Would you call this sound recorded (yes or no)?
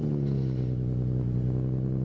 yes